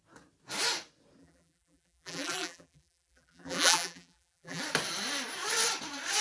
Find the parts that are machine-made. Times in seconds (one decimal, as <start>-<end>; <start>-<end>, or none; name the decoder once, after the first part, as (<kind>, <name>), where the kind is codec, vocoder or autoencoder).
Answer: 1.2-4.6 (vocoder, BigVGAN v2)